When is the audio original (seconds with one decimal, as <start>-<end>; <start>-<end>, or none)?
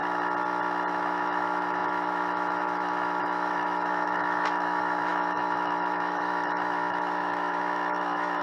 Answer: 0.0-0.9